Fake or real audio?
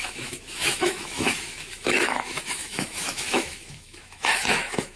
fake